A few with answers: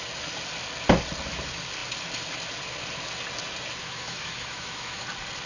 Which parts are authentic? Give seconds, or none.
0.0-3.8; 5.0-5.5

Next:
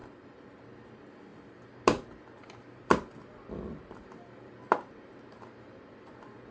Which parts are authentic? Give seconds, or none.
0.0-6.5

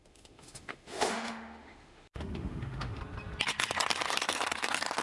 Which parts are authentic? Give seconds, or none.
3.0-5.0

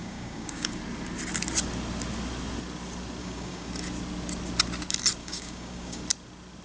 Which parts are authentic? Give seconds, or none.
0.8-3.2; 3.7-5.2; 6.0-6.6

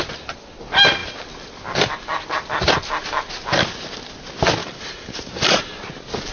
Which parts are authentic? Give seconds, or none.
0.0-4.6; 5.6-6.3

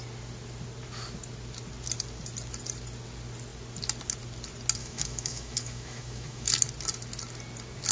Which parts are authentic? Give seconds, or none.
0.0-4.8; 6.5-7.9

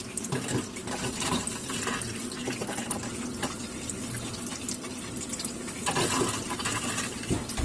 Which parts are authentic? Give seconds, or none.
0.0-0.8; 1.4-3.3; 5.4-7.6